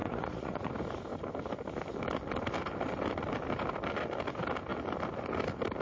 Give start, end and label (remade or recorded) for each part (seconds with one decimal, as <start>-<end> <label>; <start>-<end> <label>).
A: 0.0-0.7 remade; 0.7-5.8 recorded